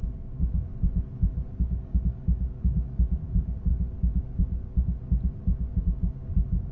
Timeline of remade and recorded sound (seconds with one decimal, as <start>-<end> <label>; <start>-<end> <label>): 0.0-0.7 remade; 0.7-1.5 recorded; 1.5-3.7 remade; 3.7-5.8 recorded; 5.8-6.7 remade